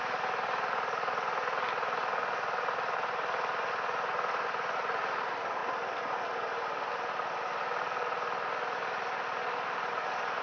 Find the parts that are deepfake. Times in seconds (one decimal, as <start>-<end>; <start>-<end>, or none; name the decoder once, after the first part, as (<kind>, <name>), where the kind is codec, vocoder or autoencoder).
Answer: none